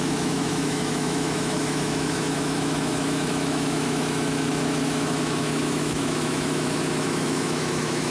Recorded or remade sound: remade